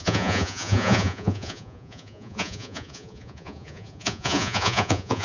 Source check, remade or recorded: remade